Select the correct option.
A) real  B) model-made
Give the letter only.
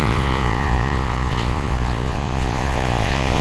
B